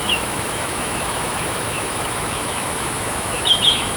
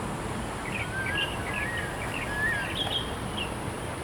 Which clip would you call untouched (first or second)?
second